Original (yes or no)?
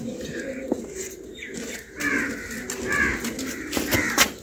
yes